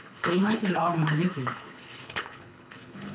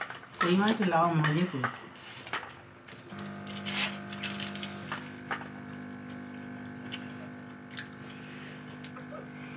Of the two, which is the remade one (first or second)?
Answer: first